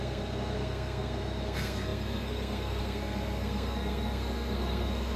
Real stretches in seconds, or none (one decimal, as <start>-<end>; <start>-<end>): none